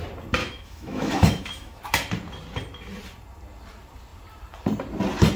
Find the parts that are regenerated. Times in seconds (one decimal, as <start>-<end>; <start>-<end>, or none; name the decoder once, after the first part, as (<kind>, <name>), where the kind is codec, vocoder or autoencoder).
0.4-1.8 (autoencoder, DAC-VAE)